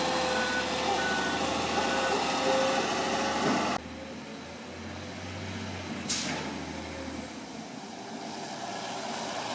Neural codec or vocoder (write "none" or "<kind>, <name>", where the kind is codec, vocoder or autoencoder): none